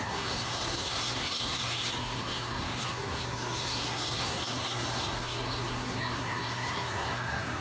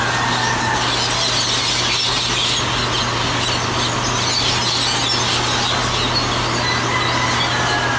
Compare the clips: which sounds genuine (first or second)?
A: second